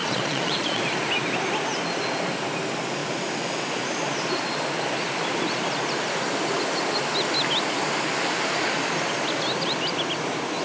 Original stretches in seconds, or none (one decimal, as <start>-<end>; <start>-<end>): 0.8-10.6